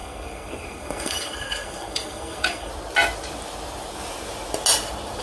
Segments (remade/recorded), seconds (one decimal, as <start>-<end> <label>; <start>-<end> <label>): 0.0-2.7 remade; 2.7-5.2 recorded